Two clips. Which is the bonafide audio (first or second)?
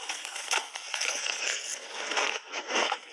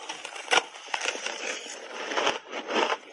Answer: second